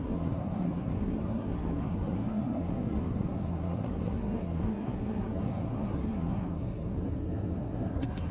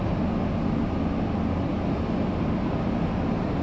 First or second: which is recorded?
second